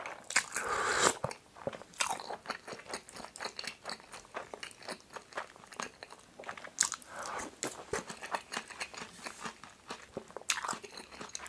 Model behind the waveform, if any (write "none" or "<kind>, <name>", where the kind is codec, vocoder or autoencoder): none